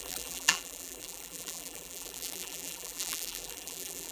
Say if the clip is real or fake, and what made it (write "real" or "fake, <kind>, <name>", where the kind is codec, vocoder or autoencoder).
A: fake, vocoder, BigVGAN v2